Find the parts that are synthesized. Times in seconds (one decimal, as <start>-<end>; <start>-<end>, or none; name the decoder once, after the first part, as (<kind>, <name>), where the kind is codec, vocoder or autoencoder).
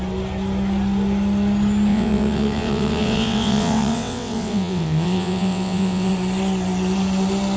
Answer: 1.9-6.1 (vocoder, WaveNeXt)